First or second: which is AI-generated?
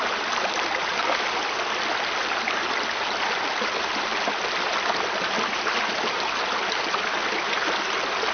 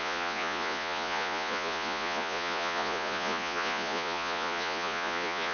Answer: second